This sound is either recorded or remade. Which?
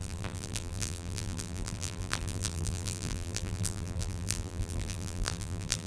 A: remade